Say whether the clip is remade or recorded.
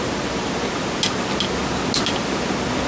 recorded